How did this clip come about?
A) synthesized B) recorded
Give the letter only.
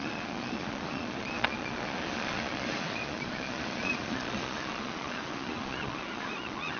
A